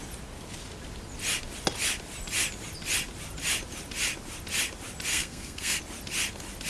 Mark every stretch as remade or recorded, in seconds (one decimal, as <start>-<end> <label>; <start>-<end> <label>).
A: 0.0-5.1 recorded; 5.1-5.8 remade; 5.8-6.7 recorded